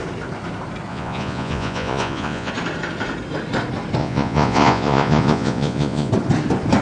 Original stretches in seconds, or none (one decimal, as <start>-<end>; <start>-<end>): 0.0-0.9; 2.5-4.0; 6.1-6.8